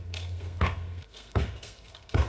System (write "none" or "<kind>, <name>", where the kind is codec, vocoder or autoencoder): codec, SNAC